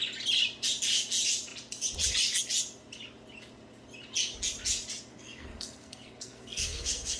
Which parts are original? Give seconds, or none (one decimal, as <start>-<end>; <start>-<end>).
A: 0.0-5.1